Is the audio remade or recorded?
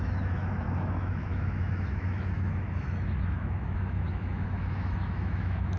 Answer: remade